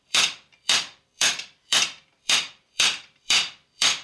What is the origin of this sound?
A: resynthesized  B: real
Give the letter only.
A